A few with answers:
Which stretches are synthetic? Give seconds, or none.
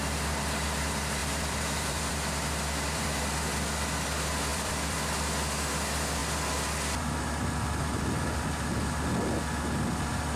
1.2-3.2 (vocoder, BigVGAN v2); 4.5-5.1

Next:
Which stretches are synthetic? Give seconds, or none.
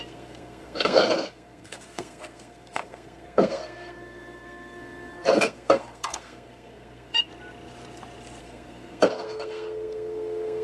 0.0-7.3 (codec, SNAC); 8.4-10.6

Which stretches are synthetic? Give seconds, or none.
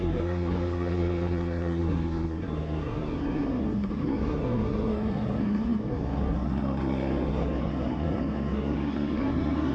0.0-9.7 (codec, SNAC)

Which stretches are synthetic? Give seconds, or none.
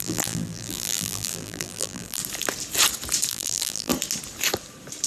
0.0-2.2 (vocoder, BigVGAN v2); 3.3-3.9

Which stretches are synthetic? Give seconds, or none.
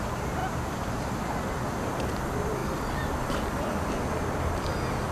0.4-1.2 (vocoder, BigVGAN v2)